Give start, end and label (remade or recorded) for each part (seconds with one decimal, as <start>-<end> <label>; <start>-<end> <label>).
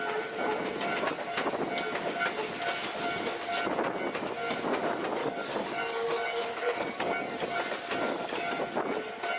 0.0-5.2 recorded; 5.2-8.6 remade; 8.6-9.4 recorded